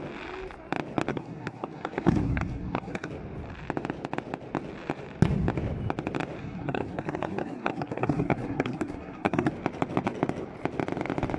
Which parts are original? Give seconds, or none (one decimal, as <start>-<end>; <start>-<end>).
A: 0.0-1.1; 3.1-6.4; 9.5-11.4